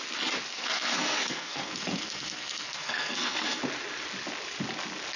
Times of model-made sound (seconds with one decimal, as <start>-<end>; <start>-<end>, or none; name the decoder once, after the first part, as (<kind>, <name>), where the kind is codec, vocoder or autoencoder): 0.5-3.6 (codec, SNAC)